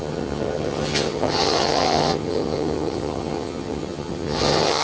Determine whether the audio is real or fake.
fake